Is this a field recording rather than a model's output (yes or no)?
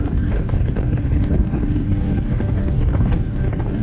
no